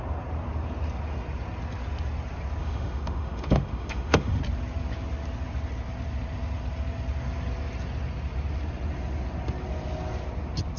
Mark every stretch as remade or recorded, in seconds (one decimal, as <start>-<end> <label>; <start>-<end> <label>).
0.0-2.6 recorded; 2.6-4.4 remade; 4.4-10.8 recorded